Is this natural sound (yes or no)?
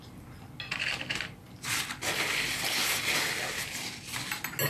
yes